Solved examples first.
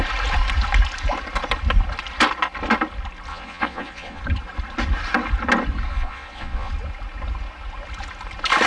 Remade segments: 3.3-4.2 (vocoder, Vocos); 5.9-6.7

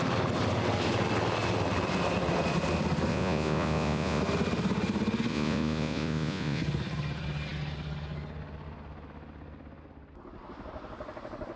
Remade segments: 3.1-4.2 (vocoder, Vocos); 5.3-6.6

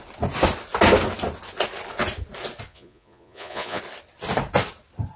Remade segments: 2.7-3.8 (vocoder, Vocos)

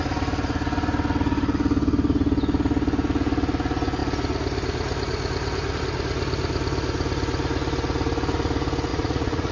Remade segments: 8.9-9.5 (vocoder, Vocos)